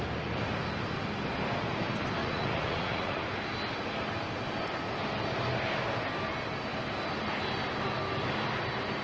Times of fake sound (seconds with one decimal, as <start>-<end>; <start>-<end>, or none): 2.2-3.2